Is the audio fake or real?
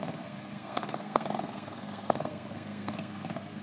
fake